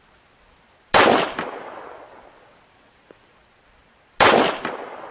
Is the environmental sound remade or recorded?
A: recorded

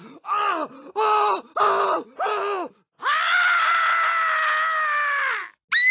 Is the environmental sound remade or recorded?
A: recorded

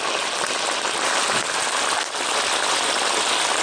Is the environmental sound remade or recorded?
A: recorded